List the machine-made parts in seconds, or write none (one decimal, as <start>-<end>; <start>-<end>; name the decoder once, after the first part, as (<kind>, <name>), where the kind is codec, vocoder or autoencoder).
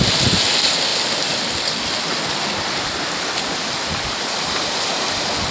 none